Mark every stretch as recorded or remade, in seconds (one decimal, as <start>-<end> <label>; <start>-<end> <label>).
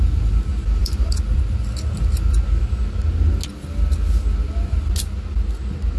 0.0-0.8 recorded; 0.8-1.4 remade; 1.4-6.0 recorded